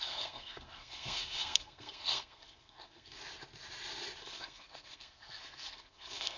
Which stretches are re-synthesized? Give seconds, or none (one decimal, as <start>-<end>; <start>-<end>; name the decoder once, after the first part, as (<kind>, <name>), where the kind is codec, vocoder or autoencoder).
0.0-3.2 (codec, SNAC); 4.2-6.4